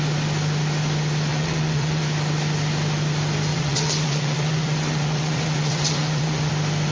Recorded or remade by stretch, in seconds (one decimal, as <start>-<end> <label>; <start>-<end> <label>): 0.0-1.3 recorded; 1.3-2.0 remade; 2.0-3.5 recorded; 3.5-6.5 remade; 6.5-6.9 recorded